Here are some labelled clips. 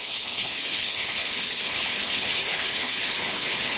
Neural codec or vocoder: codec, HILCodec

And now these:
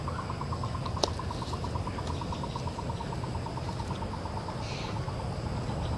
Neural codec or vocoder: none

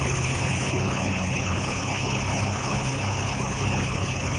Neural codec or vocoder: codec, HILCodec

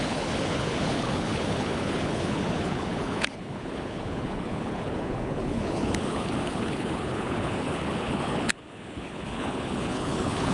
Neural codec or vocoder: codec, HILCodec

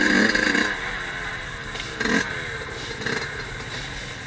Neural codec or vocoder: none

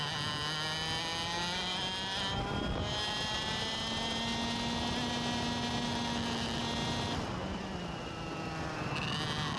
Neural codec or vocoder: none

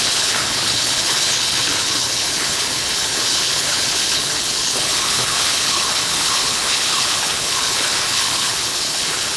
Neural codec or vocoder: codec, HILCodec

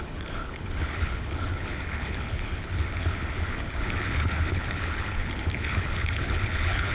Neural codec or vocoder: codec, HILCodec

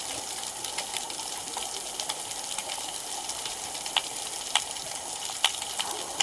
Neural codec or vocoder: none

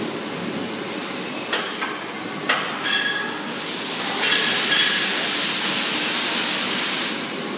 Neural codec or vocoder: none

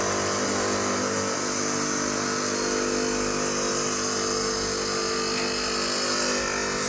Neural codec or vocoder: none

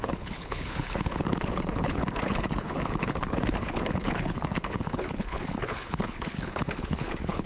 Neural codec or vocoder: codec, HILCodec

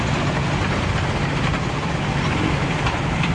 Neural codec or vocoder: none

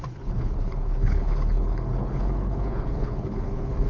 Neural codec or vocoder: codec, HILCodec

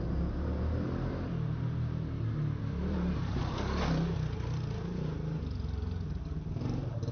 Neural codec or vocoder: none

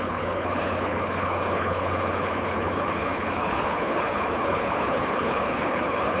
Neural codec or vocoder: codec, HILCodec